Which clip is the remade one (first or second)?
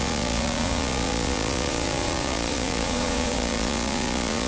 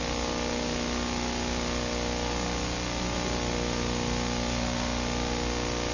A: first